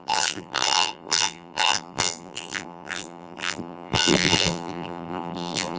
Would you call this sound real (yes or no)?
no